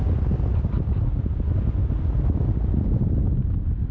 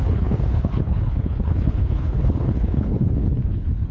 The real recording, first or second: first